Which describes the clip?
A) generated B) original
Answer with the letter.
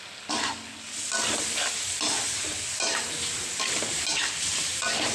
B